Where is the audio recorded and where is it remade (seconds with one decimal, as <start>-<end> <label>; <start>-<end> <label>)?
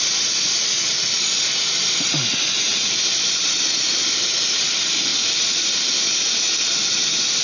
0.0-2.7 recorded; 2.7-3.5 remade; 3.5-7.4 recorded